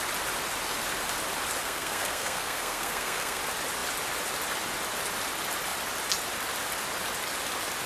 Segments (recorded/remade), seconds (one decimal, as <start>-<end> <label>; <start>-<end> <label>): 0.0-1.6 recorded; 1.6-3.4 remade; 3.4-7.9 recorded